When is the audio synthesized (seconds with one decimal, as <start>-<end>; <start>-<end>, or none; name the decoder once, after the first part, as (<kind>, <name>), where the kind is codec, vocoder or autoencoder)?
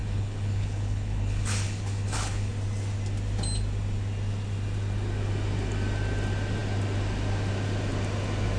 0.0-2.5 (codec, HILCodec)